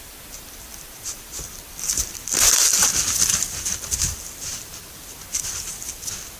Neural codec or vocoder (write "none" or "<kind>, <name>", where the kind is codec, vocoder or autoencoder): none